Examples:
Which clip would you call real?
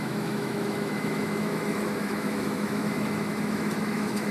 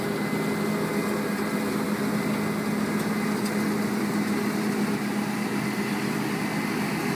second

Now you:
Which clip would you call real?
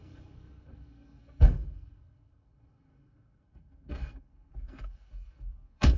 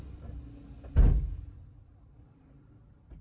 second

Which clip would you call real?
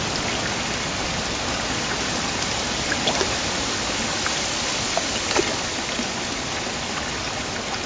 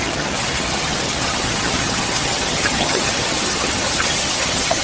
first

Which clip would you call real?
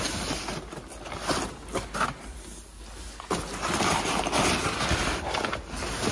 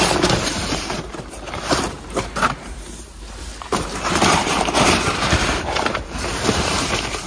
first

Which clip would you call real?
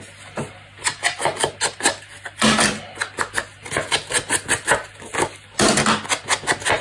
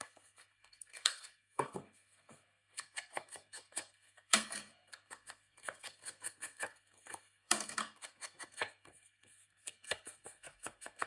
first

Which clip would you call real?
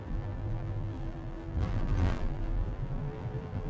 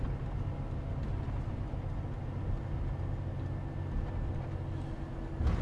second